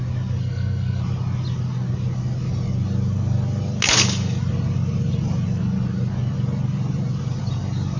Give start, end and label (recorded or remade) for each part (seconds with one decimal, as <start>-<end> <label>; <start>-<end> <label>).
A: 0.0-0.4 recorded; 0.4-1.0 remade; 1.0-8.0 recorded